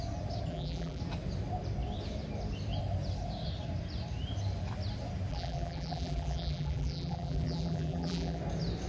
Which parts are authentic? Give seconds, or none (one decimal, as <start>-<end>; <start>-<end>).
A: 0.0-0.5; 1.0-5.3; 8.4-8.9